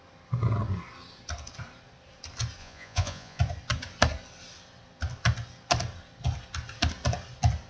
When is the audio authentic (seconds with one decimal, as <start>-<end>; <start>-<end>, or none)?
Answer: 0.0-2.6; 3.4-7.7